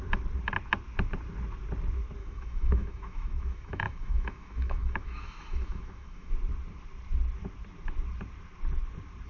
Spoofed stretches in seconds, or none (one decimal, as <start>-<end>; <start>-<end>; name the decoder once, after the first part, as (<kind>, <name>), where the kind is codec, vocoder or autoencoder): 2.2-6.3 (autoencoder, DAC-VAE)